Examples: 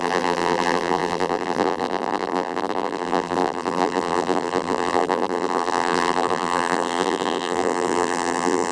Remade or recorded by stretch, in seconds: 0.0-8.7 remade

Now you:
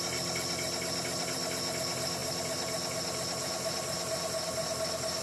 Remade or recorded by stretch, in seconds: 0.0-5.2 recorded

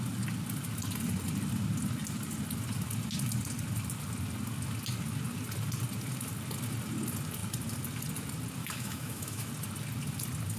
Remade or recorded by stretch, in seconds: 0.0-8.6 recorded; 8.6-9.5 remade; 9.5-10.6 recorded

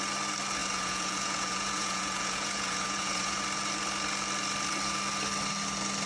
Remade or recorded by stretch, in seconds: 0.0-0.6 recorded; 0.6-3.4 remade; 3.4-6.1 recorded